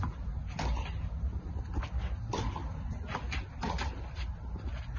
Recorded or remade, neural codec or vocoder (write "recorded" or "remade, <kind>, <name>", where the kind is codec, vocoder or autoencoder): recorded